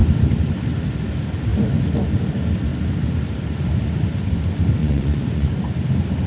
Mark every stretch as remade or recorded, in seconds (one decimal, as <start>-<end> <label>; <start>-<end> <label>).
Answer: 0.0-4.8 recorded; 4.8-5.5 remade; 5.5-6.3 recorded